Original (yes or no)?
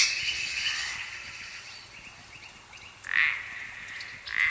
yes